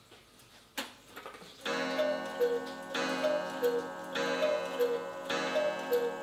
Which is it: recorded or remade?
recorded